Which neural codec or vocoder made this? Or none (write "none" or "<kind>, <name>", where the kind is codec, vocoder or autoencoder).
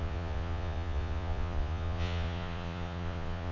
vocoder, Vocos